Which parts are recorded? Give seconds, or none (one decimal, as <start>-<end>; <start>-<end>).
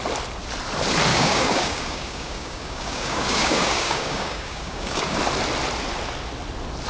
0.0-1.1; 5.2-6.9